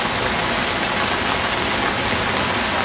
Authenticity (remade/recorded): recorded